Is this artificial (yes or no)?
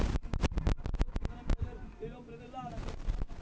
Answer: no